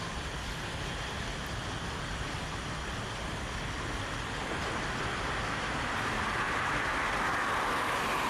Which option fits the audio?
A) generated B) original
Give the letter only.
B